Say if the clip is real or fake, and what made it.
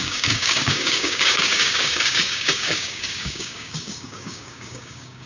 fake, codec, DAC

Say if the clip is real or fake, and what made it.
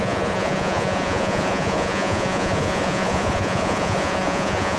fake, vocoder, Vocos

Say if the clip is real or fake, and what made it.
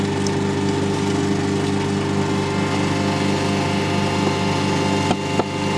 real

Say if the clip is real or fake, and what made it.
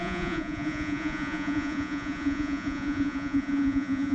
fake, vocoder, Vocos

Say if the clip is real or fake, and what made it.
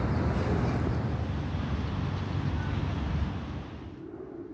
real